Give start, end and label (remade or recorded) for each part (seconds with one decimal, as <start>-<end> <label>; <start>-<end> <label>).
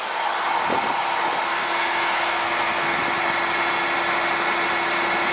0.0-1.5 recorded; 1.5-3.0 remade; 3.0-5.3 recorded